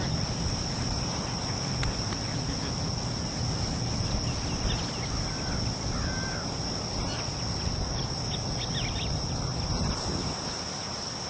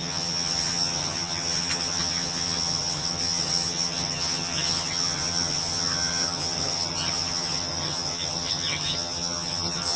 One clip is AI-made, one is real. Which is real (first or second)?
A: first